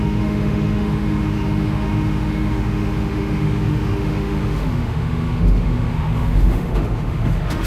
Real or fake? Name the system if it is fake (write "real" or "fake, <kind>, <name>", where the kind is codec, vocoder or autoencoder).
fake, autoencoder, DAC-VAE